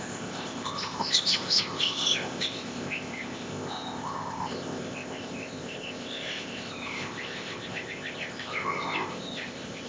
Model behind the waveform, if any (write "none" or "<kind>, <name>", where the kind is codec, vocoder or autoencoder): codec, ZipCodec